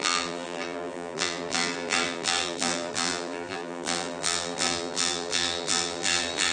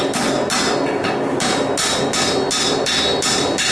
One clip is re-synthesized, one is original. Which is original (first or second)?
second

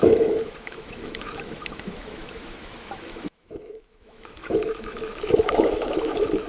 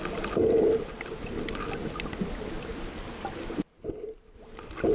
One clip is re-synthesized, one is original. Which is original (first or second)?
second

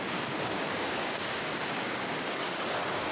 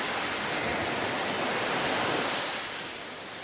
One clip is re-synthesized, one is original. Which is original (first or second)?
second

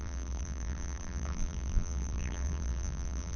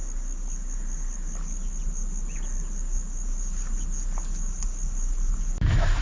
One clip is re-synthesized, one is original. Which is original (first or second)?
second